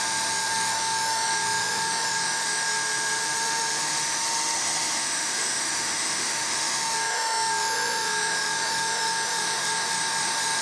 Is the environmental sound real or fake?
fake